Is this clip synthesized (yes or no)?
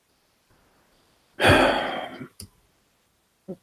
yes